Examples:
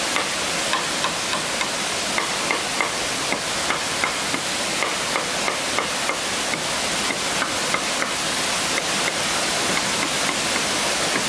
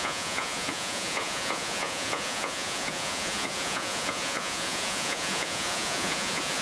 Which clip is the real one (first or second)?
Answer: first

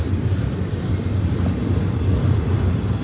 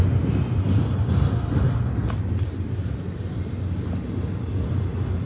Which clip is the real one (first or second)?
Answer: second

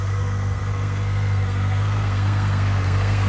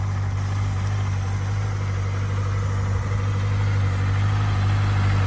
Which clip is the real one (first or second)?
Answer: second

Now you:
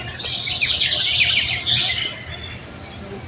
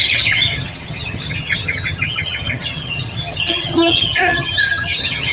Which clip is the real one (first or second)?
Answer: first